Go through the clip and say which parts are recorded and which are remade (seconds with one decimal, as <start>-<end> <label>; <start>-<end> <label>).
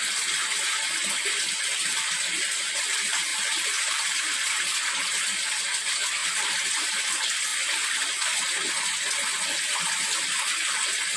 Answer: 0.0-1.8 recorded; 1.8-2.4 remade; 2.4-3.3 recorded; 3.3-4.6 remade; 4.6-6.2 recorded; 6.2-7.1 remade; 7.1-11.2 recorded